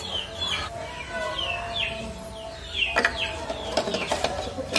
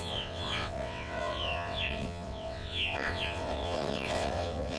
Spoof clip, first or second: second